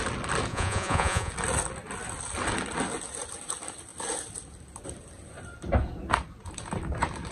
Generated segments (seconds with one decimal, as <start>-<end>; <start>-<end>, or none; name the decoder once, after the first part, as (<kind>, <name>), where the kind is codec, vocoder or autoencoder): 0.5-1.3 (vocoder, Vocos)